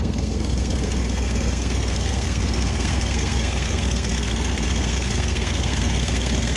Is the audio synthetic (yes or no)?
yes